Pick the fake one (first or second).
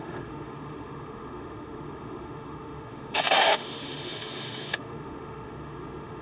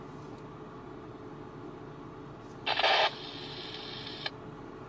first